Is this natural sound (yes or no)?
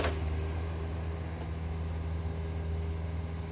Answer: yes